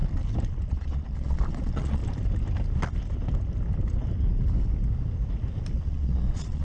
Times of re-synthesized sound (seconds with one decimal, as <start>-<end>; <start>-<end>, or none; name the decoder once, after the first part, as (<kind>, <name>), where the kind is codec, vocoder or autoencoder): 0.7-2.0 (vocoder, Vocos); 5.9-6.6

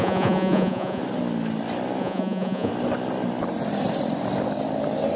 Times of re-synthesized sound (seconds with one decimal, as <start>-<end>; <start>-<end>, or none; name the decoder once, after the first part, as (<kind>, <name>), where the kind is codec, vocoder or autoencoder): 0.0-1.0 (vocoder, Vocos); 2.0-2.7

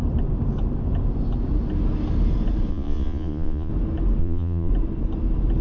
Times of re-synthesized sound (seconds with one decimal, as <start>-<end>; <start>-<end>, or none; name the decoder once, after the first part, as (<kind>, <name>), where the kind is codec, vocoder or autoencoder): 2.7-3.7 (vocoder, Vocos); 4.2-4.7

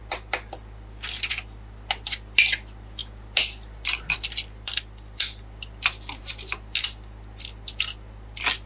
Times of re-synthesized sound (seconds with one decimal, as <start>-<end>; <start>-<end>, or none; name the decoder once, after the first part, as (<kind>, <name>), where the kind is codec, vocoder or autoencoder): none

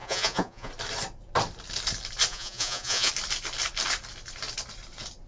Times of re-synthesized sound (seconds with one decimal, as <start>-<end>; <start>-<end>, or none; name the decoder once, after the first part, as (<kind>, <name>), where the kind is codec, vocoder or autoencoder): 0.0-0.7 (vocoder, Vocos); 2.3-3.1

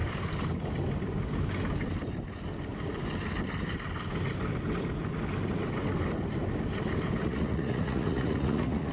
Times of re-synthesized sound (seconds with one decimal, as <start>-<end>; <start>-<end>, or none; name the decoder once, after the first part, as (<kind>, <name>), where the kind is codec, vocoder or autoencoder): 7.2-8.9 (vocoder, Vocos)